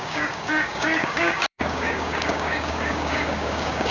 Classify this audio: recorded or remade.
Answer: remade